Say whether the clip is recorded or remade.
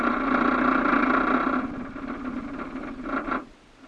recorded